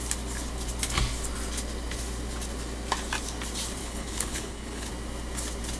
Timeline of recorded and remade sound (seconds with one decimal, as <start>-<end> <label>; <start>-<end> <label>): 0.0-3.8 recorded; 3.8-4.9 remade; 4.9-5.8 recorded

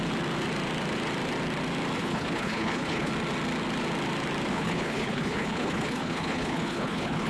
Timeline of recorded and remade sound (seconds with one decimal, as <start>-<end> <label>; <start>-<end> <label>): 0.0-2.0 recorded; 2.0-3.1 remade; 3.1-4.5 recorded; 4.5-7.3 remade

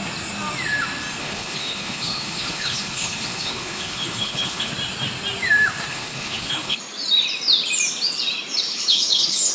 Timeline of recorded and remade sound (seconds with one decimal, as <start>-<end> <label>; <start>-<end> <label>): 0.0-1.2 recorded; 1.2-4.7 remade; 4.7-5.9 recorded; 5.9-6.8 remade; 6.8-8.7 recorded; 8.7-9.5 remade

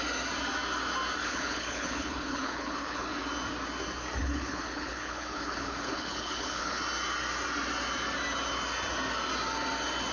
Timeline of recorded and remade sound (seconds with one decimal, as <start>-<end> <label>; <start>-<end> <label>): 0.0-1.2 recorded; 1.2-3.1 remade; 3.1-4.2 recorded; 4.2-6.8 remade; 6.8-10.1 recorded